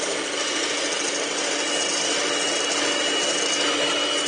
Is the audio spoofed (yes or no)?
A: no